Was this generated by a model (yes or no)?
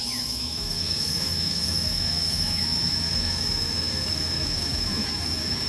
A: yes